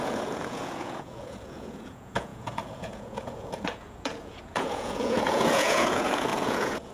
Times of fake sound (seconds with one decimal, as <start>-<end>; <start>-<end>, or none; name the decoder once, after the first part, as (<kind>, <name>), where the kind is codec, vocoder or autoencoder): 0.0-6.9 (vocoder, Vocos)